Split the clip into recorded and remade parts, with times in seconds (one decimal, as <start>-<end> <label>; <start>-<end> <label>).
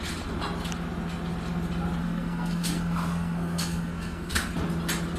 0.0-2.0 recorded; 2.0-4.5 remade; 4.5-5.2 recorded